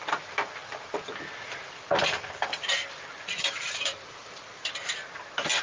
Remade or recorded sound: recorded